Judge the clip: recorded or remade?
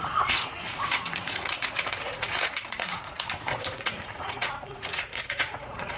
remade